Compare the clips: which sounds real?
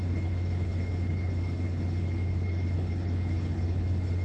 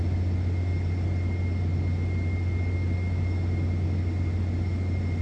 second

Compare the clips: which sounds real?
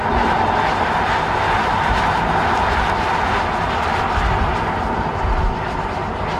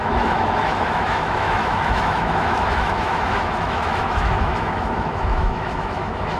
first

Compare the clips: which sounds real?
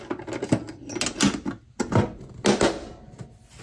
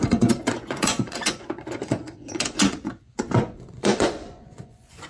first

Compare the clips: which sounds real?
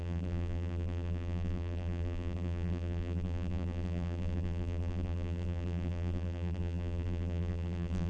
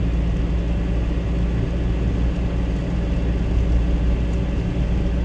second